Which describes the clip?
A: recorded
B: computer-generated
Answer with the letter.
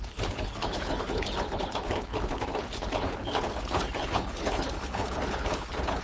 B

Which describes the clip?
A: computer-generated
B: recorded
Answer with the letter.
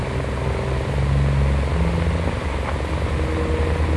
B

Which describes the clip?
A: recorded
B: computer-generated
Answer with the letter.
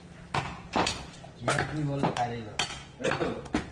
A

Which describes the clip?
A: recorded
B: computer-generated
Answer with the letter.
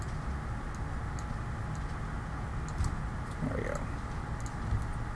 A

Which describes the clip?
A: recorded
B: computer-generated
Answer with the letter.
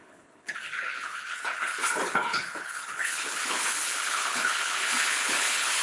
B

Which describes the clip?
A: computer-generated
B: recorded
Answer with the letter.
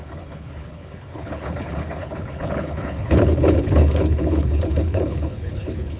A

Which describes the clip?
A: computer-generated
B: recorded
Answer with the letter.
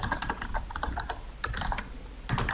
B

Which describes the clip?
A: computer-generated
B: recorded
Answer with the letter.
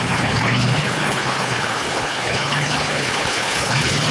A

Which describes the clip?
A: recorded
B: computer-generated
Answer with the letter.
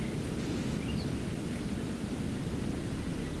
A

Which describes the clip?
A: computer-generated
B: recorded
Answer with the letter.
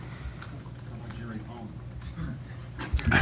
B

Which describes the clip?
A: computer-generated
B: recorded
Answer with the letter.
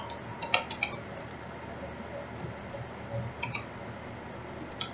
B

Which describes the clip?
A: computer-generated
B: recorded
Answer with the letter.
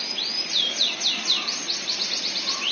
B